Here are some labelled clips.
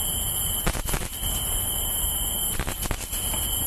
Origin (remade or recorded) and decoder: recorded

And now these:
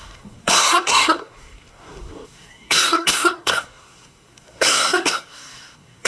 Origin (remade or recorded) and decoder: remade, codec, SNAC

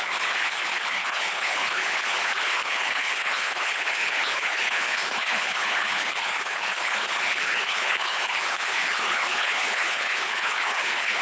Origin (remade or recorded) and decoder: remade, codec, HILCodec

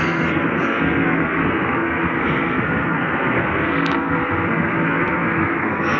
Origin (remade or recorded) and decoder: remade, codec, SNAC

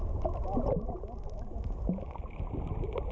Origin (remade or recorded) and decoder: recorded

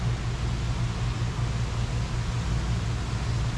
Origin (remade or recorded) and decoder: recorded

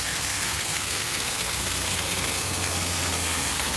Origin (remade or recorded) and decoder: remade, codec, SNAC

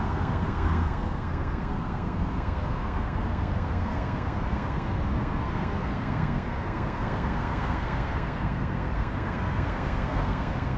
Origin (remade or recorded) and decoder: remade, codec, SNAC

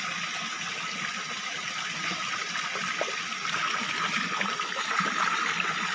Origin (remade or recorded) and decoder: recorded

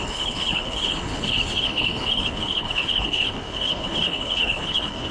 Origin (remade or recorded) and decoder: remade, codec, HILCodec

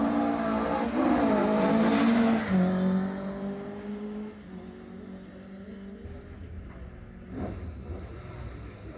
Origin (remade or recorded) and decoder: recorded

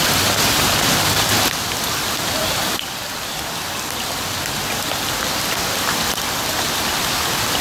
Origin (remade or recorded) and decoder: recorded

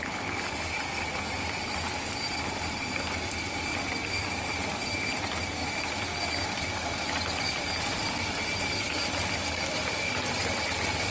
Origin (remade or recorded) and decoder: recorded